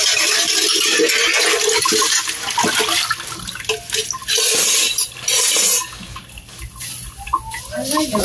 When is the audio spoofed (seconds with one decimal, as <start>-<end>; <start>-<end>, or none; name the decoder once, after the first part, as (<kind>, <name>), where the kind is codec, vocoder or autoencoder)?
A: none